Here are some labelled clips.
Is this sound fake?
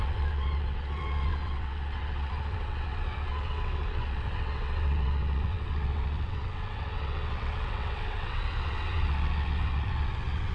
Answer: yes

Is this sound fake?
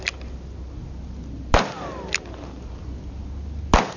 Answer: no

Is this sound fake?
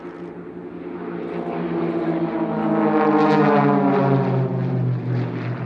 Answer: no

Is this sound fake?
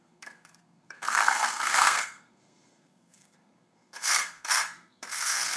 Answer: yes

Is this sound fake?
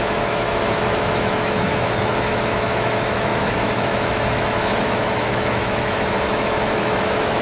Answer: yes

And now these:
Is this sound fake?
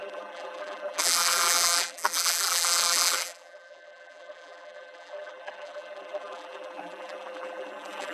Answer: yes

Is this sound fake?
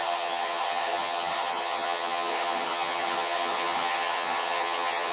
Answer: yes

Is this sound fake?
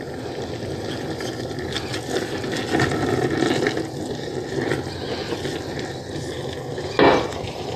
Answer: no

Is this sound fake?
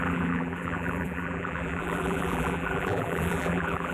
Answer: yes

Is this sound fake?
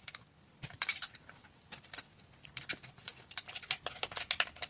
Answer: yes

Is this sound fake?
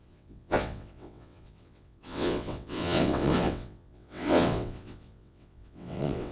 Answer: yes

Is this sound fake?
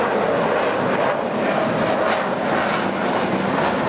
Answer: yes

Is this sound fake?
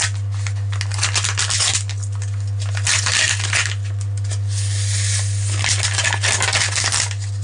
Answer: no